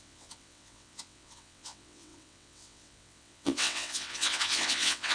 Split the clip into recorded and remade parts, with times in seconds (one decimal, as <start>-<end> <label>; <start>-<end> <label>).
0.0-5.1 remade